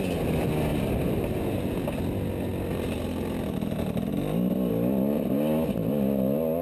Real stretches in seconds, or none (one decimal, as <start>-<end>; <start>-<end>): 0.0-0.7; 1.3-2.5; 3.0-6.6